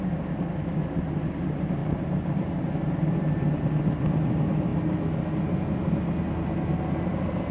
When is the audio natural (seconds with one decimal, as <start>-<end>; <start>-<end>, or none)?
0.0-1.8; 3.8-7.5